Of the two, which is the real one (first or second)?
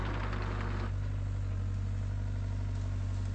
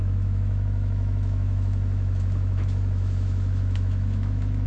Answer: first